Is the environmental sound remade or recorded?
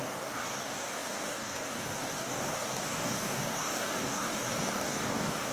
remade